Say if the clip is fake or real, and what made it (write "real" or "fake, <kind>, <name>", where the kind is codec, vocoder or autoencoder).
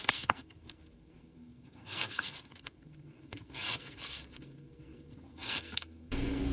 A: fake, codec, SNAC